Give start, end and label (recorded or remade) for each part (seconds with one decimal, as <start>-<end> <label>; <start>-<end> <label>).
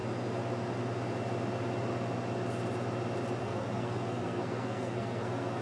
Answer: 0.0-3.4 recorded; 3.4-5.6 remade